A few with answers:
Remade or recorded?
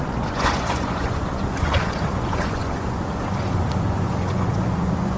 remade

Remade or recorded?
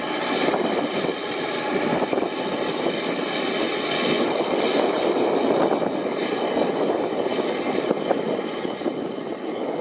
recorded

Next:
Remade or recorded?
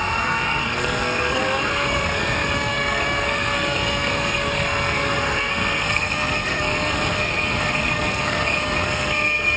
remade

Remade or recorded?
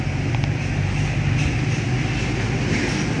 recorded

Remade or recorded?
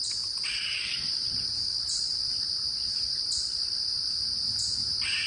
recorded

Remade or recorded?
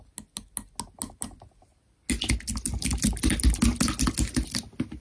recorded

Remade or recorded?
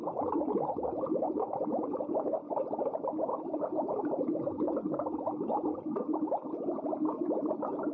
remade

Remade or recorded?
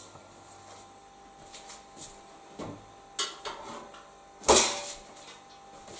recorded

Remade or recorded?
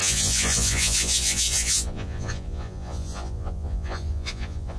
remade